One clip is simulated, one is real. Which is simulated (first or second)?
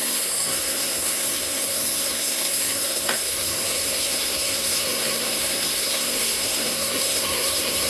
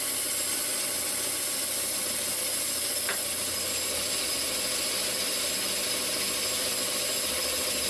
first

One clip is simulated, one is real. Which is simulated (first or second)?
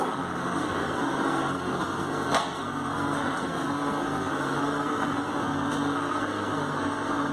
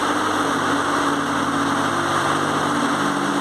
first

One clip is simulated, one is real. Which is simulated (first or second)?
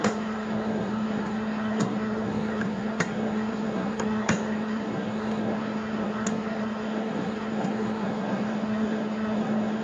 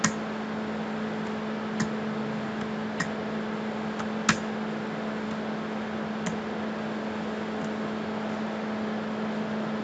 first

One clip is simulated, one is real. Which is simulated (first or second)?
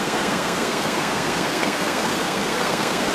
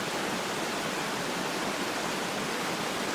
first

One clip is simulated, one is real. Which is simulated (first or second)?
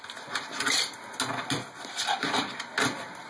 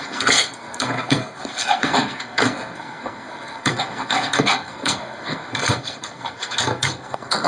second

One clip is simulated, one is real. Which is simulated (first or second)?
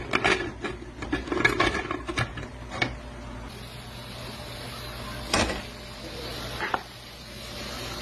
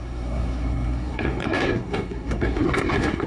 second